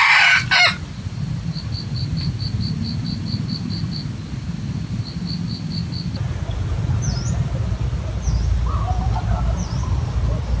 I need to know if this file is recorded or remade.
recorded